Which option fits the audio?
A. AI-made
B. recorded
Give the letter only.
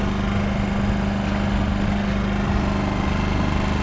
B